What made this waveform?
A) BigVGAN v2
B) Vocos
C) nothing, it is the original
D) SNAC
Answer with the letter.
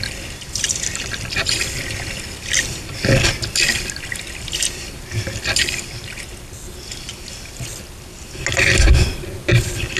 C